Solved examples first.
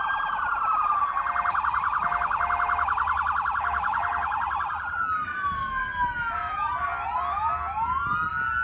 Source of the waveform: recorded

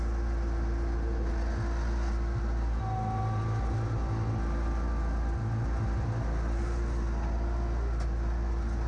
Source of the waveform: recorded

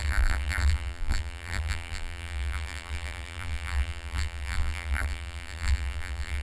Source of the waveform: remade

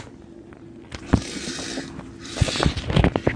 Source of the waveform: recorded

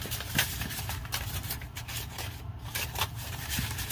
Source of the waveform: remade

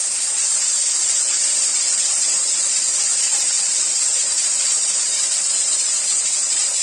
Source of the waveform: remade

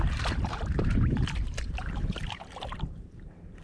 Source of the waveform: remade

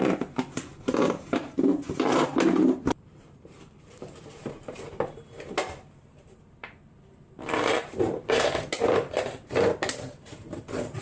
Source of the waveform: remade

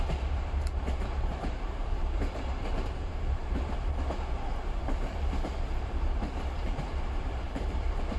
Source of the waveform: remade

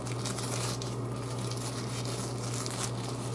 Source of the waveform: recorded